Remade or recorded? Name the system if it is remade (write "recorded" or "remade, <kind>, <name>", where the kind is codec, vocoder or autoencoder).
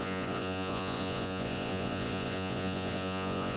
remade, vocoder, Vocos